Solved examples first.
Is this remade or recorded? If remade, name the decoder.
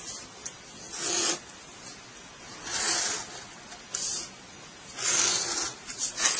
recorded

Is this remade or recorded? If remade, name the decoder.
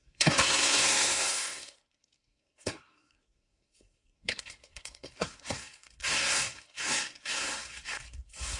remade, codec, SNAC